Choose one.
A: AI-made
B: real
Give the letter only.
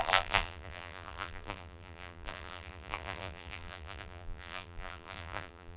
A